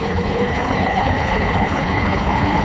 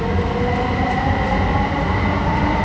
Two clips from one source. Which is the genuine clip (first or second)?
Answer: second